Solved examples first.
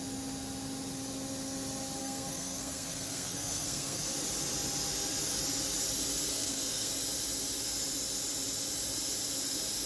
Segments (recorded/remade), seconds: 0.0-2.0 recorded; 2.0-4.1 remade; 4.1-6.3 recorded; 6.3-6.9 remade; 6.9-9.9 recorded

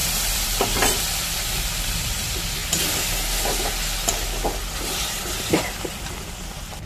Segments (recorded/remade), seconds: 0.0-2.6 remade; 2.6-5.1 recorded; 5.1-6.9 remade

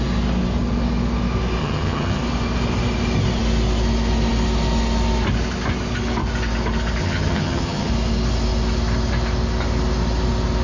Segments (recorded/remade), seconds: 0.0-1.6 recorded; 1.6-2.2 remade; 2.2-7.0 recorded; 7.0-7.9 remade; 7.9-10.6 recorded

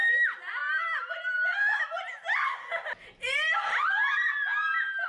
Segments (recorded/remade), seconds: 0.0-5.1 recorded

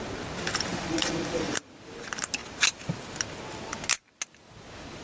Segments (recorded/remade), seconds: 0.0-0.7 recorded; 0.7-1.5 remade; 1.5-5.0 recorded